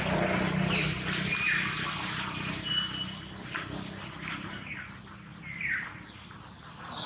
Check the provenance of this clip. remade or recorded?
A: recorded